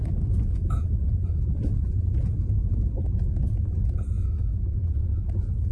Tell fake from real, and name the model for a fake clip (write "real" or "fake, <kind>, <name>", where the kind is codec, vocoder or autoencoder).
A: fake, vocoder, Vocos